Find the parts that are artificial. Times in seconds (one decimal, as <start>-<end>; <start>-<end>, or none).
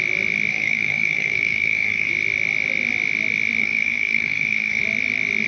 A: 0.5-2.1; 3.6-4.8